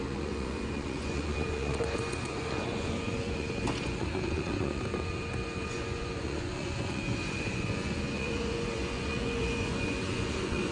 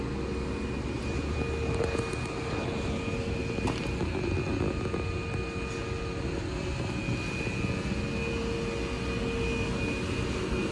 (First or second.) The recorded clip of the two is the second